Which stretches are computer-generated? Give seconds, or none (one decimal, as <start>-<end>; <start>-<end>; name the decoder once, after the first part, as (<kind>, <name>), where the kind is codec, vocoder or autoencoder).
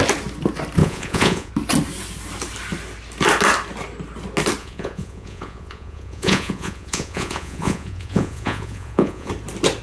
0.8-1.5 (vocoder, Vocos); 4.6-9.3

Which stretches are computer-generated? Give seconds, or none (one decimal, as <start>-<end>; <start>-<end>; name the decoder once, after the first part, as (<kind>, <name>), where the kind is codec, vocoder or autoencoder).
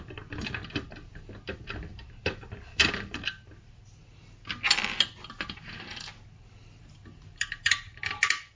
none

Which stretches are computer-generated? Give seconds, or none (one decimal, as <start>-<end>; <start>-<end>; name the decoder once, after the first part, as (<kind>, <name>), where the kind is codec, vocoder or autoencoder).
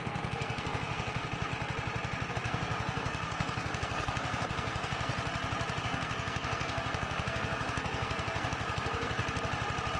0.0-1.5 (codec, SNAC); 2.3-5.1; 5.8-9.2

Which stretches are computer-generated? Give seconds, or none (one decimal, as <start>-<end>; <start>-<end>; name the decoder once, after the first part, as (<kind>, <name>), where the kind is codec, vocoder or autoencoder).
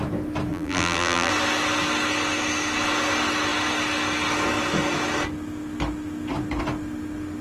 0.5-1.3 (vocoder, BigVGAN v2)